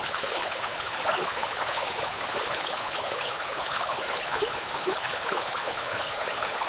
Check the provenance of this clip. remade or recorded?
remade